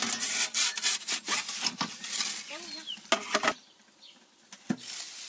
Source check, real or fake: real